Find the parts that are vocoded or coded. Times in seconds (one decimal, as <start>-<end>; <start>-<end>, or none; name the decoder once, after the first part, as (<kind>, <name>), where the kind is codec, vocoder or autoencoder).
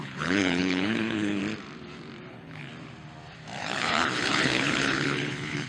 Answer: 0.0-1.4 (codec, HILCodec); 2.3-2.7; 3.6-5.7